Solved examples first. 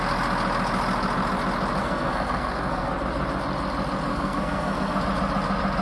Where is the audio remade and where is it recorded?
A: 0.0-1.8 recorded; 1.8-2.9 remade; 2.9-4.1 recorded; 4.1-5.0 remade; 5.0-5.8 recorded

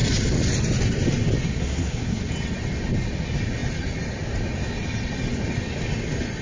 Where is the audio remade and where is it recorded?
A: 0.0-1.5 recorded; 1.5-2.3 remade; 2.3-6.4 recorded

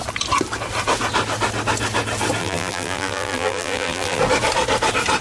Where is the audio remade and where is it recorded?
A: 0.0-2.4 recorded; 2.4-4.2 remade; 4.2-5.2 recorded

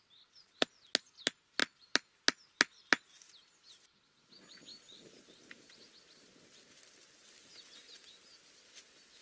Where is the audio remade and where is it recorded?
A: 0.0-9.2 recorded

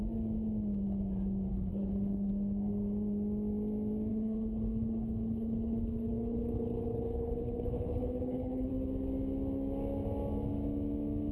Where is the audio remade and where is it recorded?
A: 0.0-1.5 recorded; 1.5-2.3 remade; 2.3-4.1 recorded; 4.1-8.7 remade; 8.7-11.3 recorded